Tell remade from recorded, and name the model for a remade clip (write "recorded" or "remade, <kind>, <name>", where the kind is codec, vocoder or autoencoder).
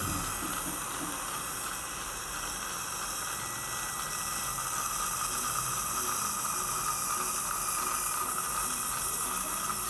recorded